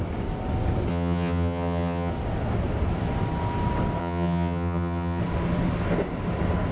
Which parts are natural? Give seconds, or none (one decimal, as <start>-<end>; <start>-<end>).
0.0-0.9; 2.1-4.0; 5.2-6.7